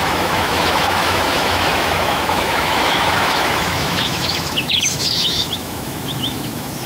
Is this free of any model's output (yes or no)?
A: no